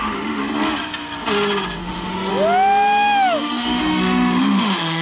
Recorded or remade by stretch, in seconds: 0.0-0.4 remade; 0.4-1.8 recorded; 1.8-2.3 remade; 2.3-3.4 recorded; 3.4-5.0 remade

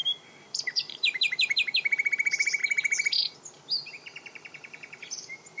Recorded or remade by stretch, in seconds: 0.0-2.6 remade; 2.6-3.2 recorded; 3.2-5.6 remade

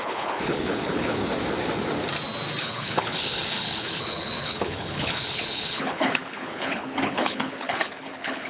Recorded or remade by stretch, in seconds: 0.0-1.2 remade; 1.2-2.6 recorded; 2.6-8.5 remade

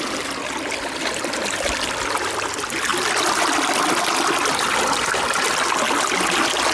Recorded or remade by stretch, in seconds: 0.0-6.7 recorded